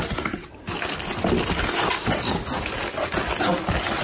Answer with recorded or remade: recorded